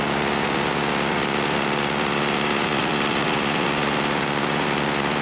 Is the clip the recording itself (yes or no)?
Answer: no